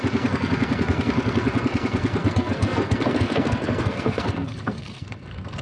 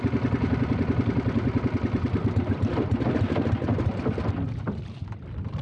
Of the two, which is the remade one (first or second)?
first